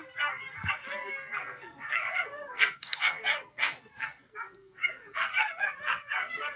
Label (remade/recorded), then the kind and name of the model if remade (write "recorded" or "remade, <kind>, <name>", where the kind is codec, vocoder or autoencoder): remade, codec, SNAC